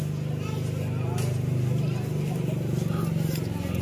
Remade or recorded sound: recorded